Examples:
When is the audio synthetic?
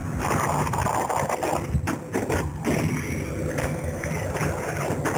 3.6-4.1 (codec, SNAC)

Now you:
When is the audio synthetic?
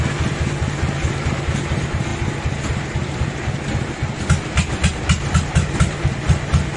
none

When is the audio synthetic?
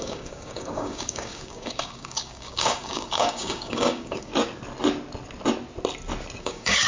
0.0-4.3 (codec, DAC); 6.4-6.9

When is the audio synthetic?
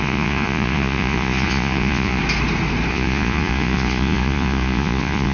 0.0-2.2 (vocoder, Vocos); 2.9-5.3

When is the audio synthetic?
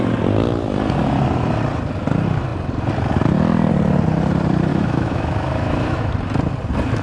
4.7-6.1 (autoencoder, DAC-VAE)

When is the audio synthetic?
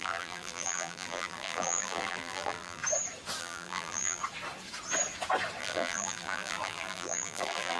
0.0-2.8 (vocoder, BigVGAN v2); 3.4-4.2; 5.6-7.8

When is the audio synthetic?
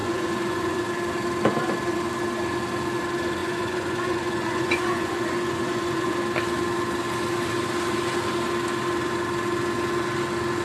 0.0-0.8 (vocoder, Vocos); 3.4-6.1